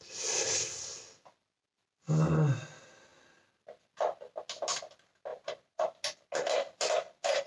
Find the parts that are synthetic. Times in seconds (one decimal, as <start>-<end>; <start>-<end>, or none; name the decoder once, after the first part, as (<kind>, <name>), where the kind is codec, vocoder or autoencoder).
5.3-6.0 (vocoder, BigVGAN v2)